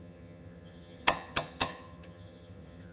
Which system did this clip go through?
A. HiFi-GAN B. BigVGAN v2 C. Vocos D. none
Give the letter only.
A